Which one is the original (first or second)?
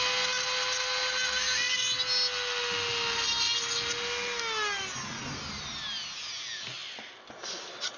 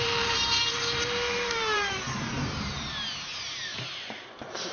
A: first